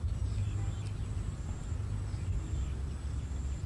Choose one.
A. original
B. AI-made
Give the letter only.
A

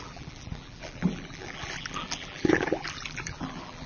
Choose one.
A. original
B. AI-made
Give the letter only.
B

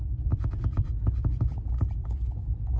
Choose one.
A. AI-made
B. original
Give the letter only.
B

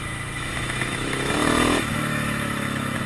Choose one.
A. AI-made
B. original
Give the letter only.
A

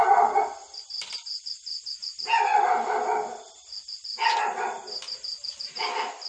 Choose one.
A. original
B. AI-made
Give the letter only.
A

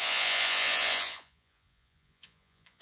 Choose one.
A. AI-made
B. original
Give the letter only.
A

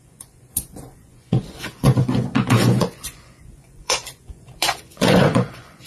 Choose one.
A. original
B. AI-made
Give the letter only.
B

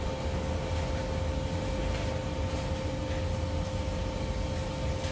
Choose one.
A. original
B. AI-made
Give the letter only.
A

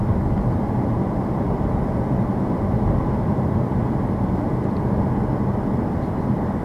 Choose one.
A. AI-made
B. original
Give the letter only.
B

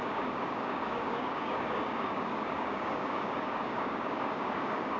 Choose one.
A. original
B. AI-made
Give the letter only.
B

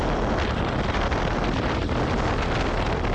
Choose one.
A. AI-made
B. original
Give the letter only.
B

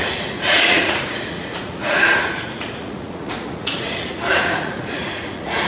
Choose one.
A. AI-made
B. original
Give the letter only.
A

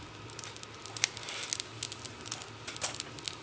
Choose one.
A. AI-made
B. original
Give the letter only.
B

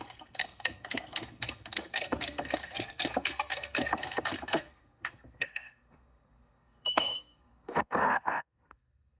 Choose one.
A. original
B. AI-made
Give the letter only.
B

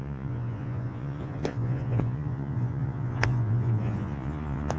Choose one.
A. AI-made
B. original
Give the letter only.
A